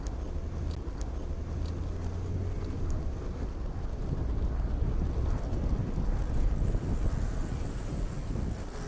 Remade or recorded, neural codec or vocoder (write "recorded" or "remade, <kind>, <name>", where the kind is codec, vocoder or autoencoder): recorded